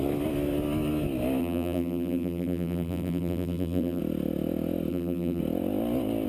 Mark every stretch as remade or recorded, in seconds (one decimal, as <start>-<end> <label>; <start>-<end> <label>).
0.0-1.4 recorded; 1.4-4.0 remade; 4.0-4.9 recorded; 4.9-5.4 remade; 5.4-6.3 recorded